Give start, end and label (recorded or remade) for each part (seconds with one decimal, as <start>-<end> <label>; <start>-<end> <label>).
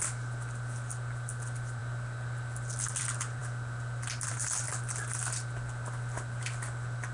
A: 0.0-7.1 recorded